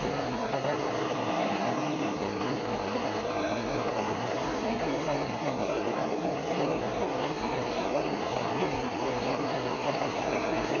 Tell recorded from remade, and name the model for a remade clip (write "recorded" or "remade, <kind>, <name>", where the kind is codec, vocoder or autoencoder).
remade, codec, SNAC